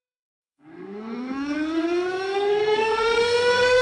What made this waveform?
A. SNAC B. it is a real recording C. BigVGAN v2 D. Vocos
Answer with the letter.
A